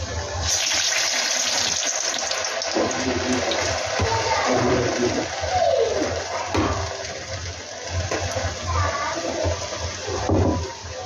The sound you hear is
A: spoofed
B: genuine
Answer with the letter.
B